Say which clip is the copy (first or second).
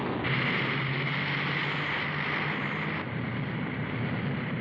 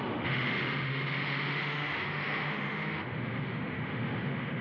second